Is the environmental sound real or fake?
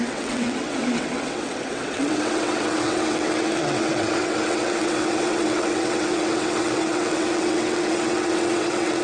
fake